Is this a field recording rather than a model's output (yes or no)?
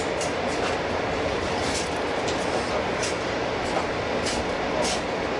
yes